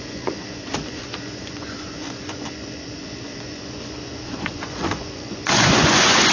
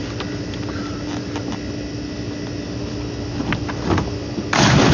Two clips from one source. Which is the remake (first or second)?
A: first